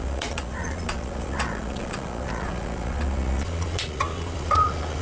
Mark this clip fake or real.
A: fake